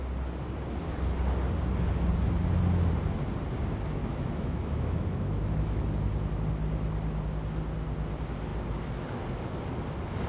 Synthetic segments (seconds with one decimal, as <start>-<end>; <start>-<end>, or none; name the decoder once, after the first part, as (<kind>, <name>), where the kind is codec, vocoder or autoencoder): 4.0-5.8 (autoencoder, DAC-VAE)